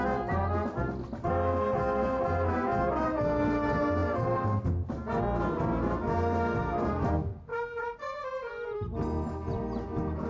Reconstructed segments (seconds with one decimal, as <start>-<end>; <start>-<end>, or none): none